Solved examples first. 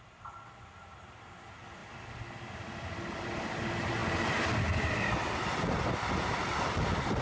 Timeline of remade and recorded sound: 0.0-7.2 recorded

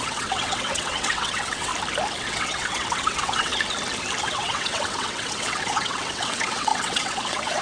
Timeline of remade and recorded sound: 0.0-1.7 remade; 1.7-2.2 recorded; 2.2-3.5 remade; 3.5-4.2 recorded; 4.2-7.6 remade